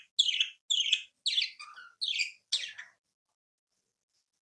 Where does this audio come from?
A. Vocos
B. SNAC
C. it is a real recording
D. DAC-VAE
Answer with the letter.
C